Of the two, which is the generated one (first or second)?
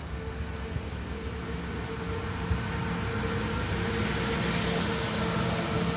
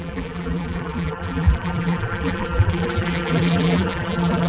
second